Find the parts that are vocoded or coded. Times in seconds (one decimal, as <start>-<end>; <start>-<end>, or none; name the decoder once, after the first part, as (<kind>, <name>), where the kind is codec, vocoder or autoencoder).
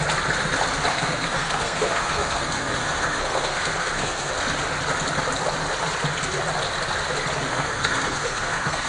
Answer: 0.9-4.3 (codec, SNAC); 7.5-8.9